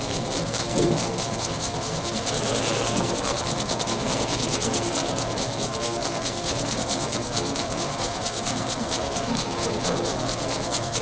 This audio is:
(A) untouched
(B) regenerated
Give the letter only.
B